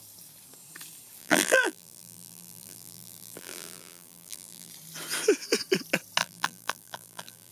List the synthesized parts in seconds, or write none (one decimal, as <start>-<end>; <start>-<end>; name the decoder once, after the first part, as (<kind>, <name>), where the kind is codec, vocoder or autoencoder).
1.2-4.7 (vocoder, BigVGAN v2); 6.2-7.5